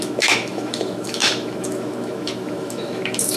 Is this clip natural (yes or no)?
no